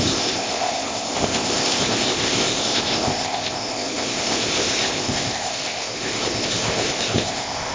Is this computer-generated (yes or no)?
yes